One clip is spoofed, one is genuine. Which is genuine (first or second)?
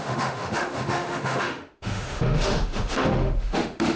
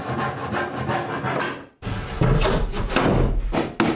second